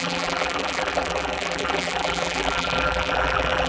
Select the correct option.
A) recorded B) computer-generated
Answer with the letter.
B